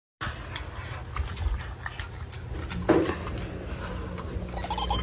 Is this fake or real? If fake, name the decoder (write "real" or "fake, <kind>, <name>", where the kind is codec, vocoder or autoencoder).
real